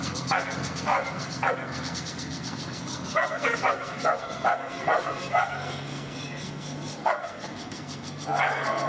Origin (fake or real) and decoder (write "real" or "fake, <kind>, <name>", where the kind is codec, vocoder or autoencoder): fake, codec, SNAC